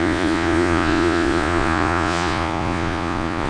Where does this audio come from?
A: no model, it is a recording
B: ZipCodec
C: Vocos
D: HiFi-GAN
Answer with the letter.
C